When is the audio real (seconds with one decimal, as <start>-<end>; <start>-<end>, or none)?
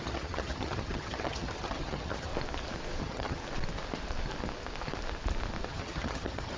2.3-3.0; 3.4-5.7